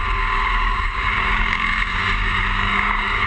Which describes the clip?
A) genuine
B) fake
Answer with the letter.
B